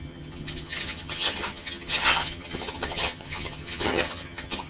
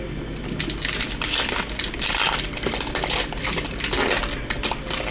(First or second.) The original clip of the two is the second